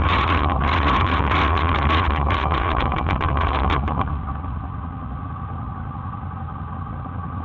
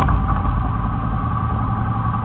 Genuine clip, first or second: second